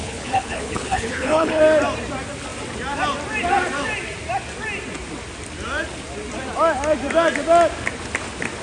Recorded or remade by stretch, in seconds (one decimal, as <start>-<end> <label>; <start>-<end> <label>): 0.0-1.6 remade; 1.6-8.6 recorded